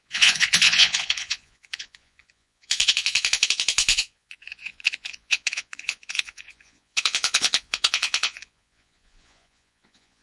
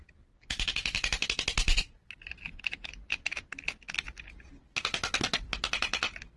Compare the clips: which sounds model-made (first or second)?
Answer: first